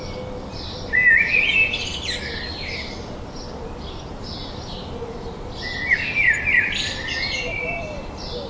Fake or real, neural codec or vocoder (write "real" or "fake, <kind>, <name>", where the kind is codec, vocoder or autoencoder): real